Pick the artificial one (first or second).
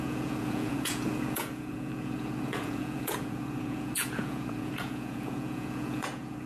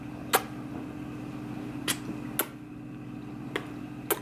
first